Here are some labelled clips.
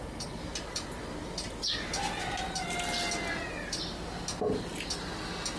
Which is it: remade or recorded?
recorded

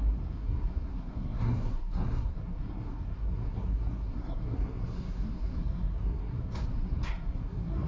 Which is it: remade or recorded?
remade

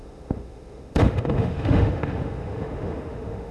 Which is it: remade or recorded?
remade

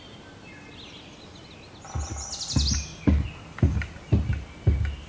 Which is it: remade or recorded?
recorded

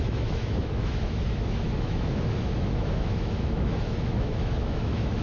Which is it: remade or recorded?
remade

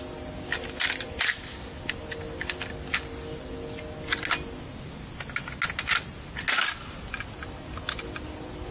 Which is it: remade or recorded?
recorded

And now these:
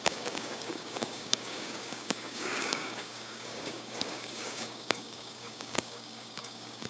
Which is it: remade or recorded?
remade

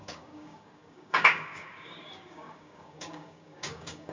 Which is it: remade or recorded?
remade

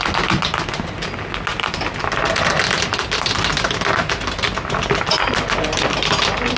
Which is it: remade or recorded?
recorded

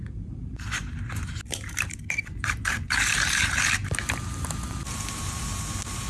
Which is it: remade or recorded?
remade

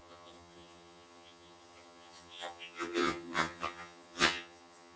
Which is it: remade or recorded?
remade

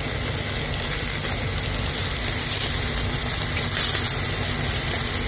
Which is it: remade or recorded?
recorded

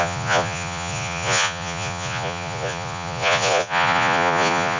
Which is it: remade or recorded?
remade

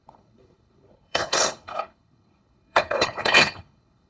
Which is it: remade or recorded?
remade